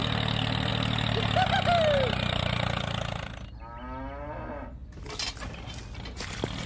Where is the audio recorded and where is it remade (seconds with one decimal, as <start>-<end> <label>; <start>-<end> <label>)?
0.0-6.7 recorded